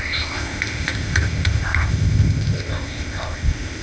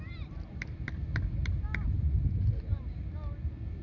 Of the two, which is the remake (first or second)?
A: first